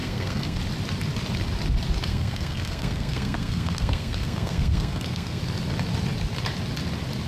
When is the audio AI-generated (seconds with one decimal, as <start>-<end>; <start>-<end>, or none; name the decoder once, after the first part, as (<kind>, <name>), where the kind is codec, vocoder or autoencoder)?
0.0-0.6 (codec, SNAC); 2.1-5.4